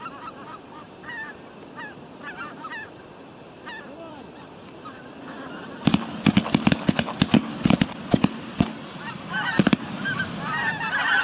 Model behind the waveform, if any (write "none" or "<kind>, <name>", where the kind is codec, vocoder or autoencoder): vocoder, BigVGAN v2